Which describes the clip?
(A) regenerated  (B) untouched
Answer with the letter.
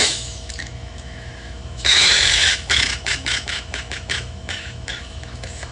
A